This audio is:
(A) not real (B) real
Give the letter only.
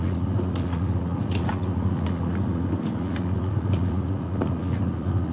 A